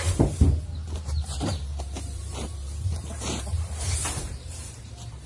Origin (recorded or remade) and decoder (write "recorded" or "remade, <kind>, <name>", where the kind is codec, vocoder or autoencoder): remade, vocoder, BigVGAN v2